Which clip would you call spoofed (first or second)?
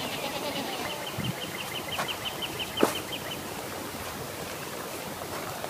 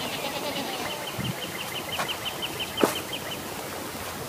first